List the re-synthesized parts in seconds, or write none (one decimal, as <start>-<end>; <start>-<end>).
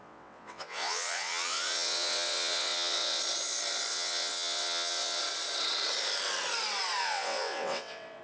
0.0-3.2; 3.9-5.2; 7.0-8.2